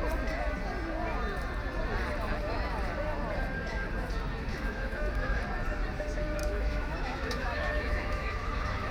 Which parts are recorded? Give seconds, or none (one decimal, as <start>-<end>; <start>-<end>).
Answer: 0.0-4.5; 5.4-6.4